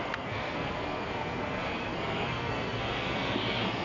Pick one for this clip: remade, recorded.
remade